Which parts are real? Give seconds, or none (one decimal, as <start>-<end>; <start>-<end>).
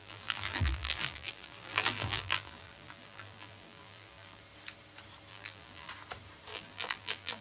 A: 4.4-5.3; 5.9-6.5